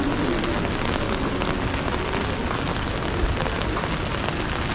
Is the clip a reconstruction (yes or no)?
no